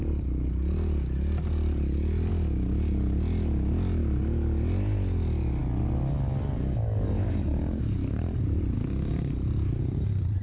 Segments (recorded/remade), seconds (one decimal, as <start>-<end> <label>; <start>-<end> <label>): 0.0-8.0 recorded; 8.0-8.6 remade; 8.6-10.4 recorded